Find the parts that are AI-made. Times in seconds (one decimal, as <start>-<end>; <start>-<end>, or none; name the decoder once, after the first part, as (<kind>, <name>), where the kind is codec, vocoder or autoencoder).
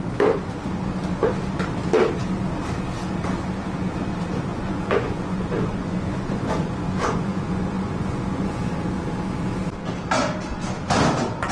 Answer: 4.5-8.6 (vocoder, Vocos)